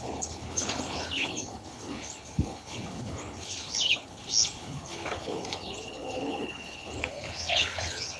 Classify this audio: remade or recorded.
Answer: remade